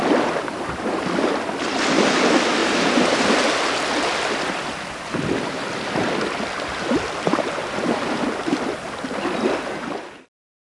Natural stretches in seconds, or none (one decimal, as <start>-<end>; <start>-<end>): 0.0-2.6; 3.2-10.8